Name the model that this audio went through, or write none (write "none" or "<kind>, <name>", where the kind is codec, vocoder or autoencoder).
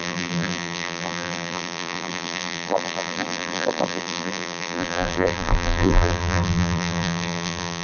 vocoder, BigVGAN v2